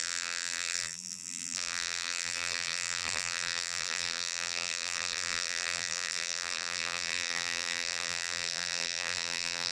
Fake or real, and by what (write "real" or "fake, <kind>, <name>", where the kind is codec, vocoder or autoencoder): fake, vocoder, BigVGAN v2